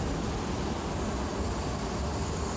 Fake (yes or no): no